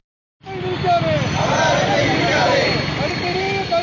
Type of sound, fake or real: real